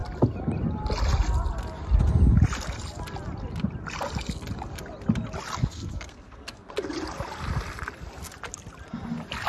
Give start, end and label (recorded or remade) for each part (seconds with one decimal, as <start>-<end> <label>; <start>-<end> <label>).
0.0-5.6 recorded; 5.6-6.7 remade; 6.7-9.5 recorded